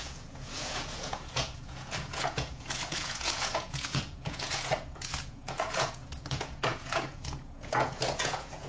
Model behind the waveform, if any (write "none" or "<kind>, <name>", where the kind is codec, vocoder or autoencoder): vocoder, Vocos